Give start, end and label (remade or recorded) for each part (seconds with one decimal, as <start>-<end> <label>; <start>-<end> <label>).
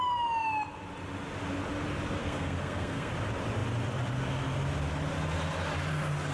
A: 0.0-2.2 recorded; 2.2-3.1 remade; 3.1-6.3 recorded